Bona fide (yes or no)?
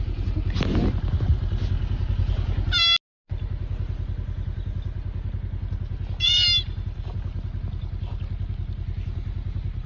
yes